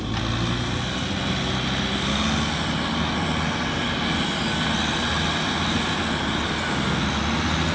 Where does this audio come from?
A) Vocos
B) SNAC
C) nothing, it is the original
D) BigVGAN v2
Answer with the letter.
C